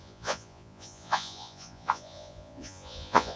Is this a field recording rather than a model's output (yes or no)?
no